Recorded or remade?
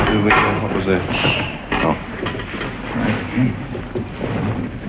recorded